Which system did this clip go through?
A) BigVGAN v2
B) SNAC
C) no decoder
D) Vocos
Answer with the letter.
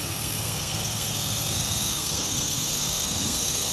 B